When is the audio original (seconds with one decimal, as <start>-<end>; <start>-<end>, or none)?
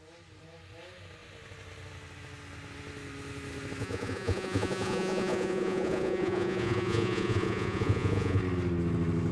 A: 0.0-3.8; 8.4-9.3